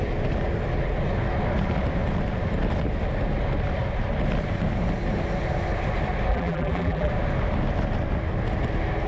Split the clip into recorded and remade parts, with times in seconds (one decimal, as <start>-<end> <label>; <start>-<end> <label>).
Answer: 0.0-6.3 recorded; 6.3-7.1 remade; 7.1-9.1 recorded